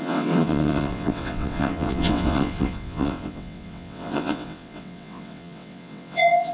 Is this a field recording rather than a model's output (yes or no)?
no